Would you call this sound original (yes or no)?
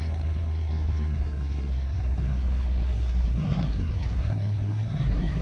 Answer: no